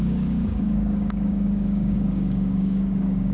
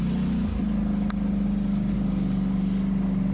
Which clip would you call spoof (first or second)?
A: first